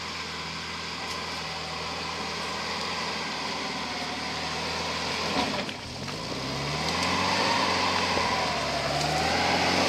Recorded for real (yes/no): yes